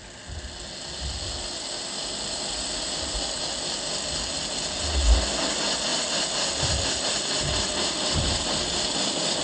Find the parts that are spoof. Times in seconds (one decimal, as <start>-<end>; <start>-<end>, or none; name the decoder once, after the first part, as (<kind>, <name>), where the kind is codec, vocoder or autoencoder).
none